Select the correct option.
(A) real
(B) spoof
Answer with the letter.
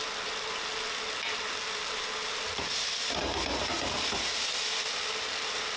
A